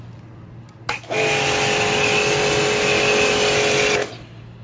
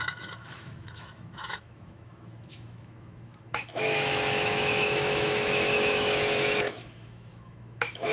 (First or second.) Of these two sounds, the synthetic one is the second